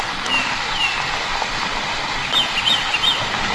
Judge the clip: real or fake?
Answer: real